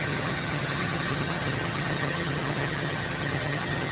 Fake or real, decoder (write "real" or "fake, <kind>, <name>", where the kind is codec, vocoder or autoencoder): fake, vocoder, HiFi-GAN